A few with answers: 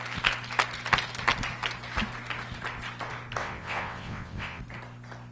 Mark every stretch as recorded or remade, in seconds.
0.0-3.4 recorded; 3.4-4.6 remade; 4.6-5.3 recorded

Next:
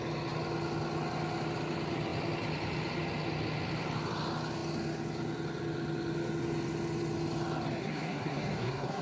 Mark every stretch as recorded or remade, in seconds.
0.0-7.8 recorded; 7.8-9.0 remade

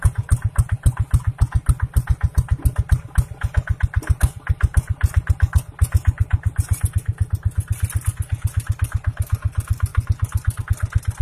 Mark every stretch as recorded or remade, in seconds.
0.0-11.2 recorded